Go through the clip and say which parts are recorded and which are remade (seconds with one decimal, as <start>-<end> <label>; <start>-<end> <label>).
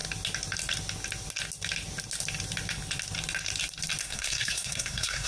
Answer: 0.0-4.0 recorded; 4.0-5.3 remade